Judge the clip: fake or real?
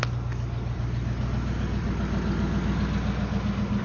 real